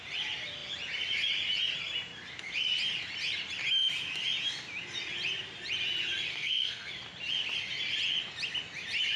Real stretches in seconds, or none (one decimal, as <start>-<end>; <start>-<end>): 0.0-6.3; 6.9-9.2